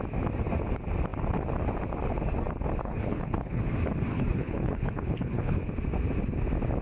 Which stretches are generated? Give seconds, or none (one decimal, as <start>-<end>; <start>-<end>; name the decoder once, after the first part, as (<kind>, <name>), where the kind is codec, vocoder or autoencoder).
2.8-3.6 (codec, HILCodec); 4.1-5.7